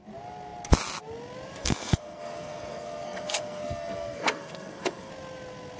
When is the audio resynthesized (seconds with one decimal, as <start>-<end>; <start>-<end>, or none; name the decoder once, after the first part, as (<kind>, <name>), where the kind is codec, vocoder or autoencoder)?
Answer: 1.6-5.1 (codec, SNAC)